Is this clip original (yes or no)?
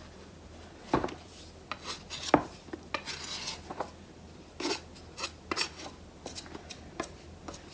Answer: yes